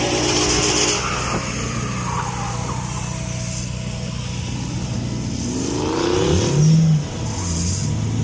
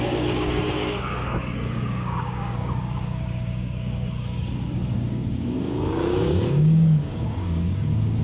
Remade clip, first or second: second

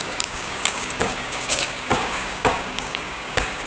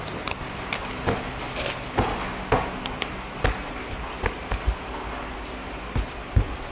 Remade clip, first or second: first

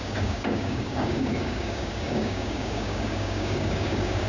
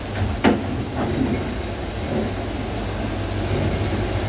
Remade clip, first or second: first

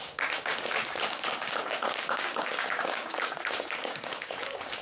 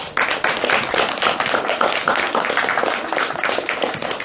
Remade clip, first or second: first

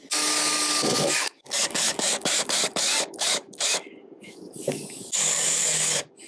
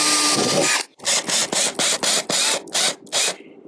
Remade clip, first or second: first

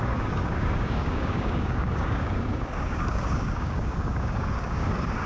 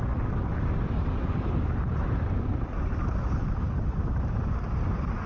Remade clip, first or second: first